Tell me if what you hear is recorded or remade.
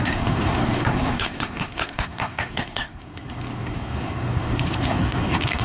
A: remade